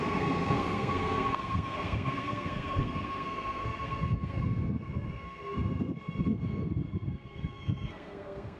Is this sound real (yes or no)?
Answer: no